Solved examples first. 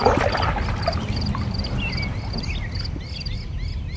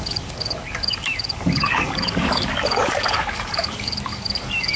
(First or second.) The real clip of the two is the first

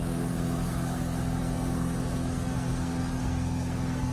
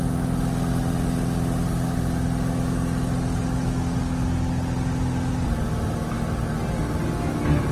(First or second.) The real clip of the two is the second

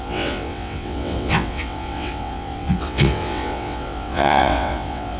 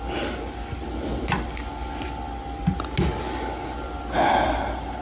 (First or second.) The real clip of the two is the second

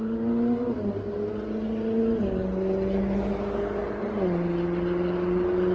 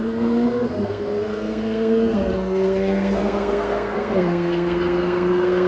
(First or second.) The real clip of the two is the first